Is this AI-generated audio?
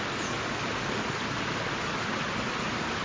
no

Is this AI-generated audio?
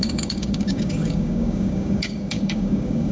yes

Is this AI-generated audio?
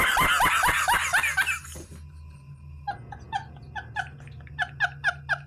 no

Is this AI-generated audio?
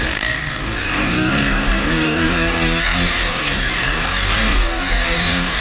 yes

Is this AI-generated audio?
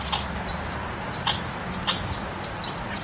no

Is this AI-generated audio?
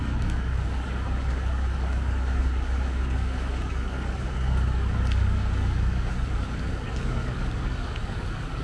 yes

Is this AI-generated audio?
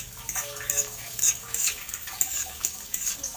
yes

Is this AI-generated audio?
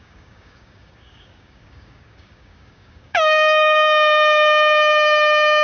yes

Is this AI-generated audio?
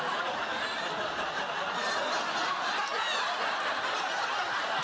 no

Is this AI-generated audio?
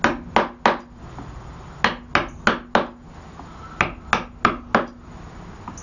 no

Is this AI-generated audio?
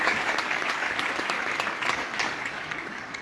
yes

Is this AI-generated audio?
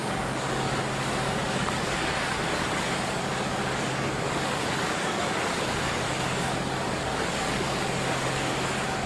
yes